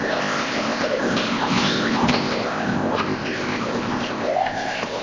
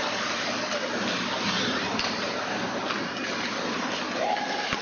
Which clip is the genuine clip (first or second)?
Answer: second